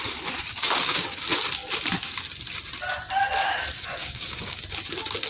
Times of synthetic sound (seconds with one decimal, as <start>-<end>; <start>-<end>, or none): 0.5-1.2; 4.0-4.6